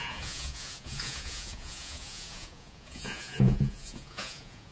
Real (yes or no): no